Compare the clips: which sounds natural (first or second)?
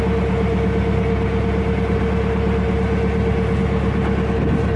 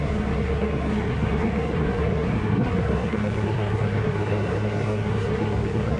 first